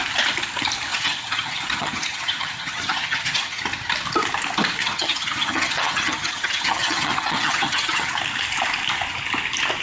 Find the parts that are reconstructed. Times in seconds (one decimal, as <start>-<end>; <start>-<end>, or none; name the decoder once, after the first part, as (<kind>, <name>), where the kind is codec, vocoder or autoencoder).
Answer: 0.9-3.6 (vocoder, HiFi-GAN); 4.8-8.1